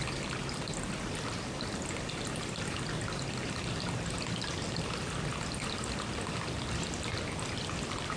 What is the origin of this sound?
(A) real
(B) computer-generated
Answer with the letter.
A